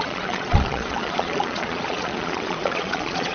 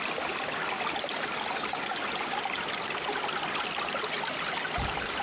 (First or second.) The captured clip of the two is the second